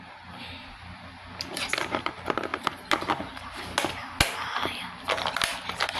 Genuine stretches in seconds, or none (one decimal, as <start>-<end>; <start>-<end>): 0.0-6.0